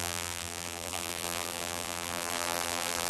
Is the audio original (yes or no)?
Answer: no